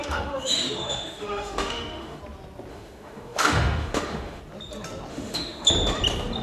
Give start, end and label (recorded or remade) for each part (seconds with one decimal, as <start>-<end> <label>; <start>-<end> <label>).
0.0-2.2 remade; 2.2-2.7 recorded; 2.7-4.4 remade; 4.4-5.1 recorded; 5.1-5.7 remade; 5.7-6.4 recorded

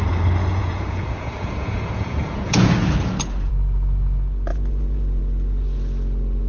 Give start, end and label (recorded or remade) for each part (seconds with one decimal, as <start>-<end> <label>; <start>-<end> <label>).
0.0-0.4 recorded; 0.4-3.5 remade; 3.5-4.5 recorded; 4.5-5.2 remade; 5.2-6.5 recorded

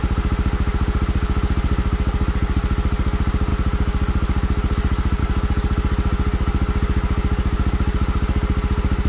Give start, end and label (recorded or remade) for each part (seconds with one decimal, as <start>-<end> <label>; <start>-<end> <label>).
0.0-9.1 recorded

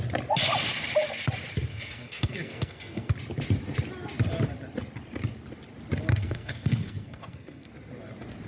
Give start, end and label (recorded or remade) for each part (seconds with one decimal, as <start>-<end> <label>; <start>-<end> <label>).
0.0-1.7 recorded; 1.7-3.1 remade; 3.1-6.1 recorded; 6.1-7.7 remade; 7.7-8.5 recorded

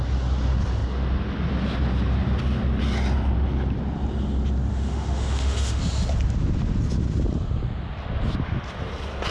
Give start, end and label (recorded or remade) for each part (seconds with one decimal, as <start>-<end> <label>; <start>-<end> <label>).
0.0-4.7 recorded; 4.7-5.8 remade; 5.8-9.3 recorded